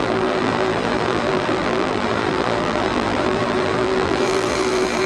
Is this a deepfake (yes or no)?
yes